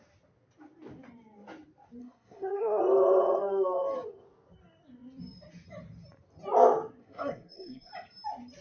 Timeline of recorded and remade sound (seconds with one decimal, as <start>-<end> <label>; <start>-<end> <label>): 0.0-2.0 recorded; 2.0-2.8 remade; 2.8-7.0 recorded; 7.0-7.9 remade; 7.9-8.6 recorded